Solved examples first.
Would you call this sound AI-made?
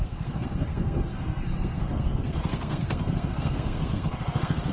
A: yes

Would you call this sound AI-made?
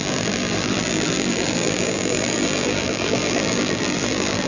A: yes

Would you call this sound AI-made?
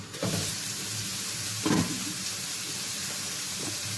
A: yes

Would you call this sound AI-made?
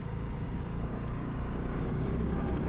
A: yes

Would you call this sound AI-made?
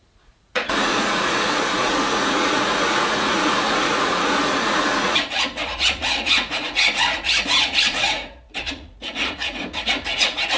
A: yes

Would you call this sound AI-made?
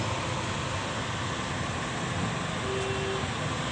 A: no